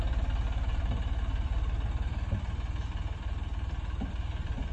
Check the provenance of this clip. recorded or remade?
remade